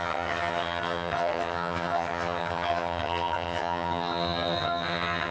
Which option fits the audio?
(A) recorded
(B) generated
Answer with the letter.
B